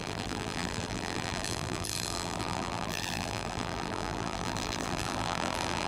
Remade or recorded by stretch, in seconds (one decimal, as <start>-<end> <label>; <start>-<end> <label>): 0.0-5.9 remade